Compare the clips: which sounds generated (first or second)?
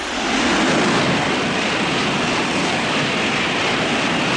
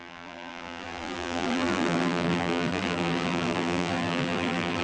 second